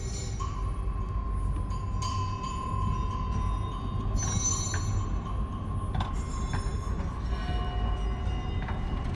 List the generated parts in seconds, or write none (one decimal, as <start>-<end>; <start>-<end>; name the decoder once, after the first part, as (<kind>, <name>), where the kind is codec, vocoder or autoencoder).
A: none